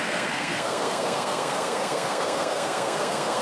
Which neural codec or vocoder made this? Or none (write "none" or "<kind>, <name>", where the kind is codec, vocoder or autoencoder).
codec, SNAC